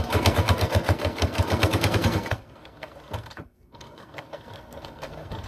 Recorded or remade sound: remade